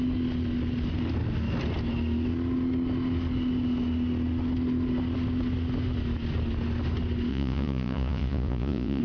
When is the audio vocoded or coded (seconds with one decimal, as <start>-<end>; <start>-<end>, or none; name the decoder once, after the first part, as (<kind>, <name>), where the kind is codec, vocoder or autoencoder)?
7.3-9.0 (vocoder, Vocos)